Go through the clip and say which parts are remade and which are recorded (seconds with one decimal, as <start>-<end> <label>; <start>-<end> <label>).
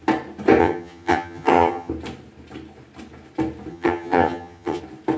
0.0-0.6 recorded; 0.6-1.9 remade; 1.9-3.7 recorded; 3.7-4.8 remade; 4.8-5.2 recorded